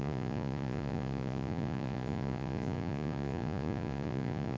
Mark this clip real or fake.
fake